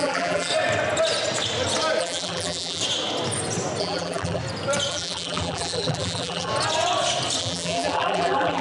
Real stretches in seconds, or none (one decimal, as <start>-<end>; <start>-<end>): 0.5-2.0; 2.8-3.8; 4.4-4.9; 6.5-7.4